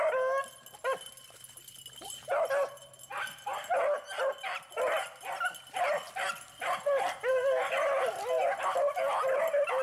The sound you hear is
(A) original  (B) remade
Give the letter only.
A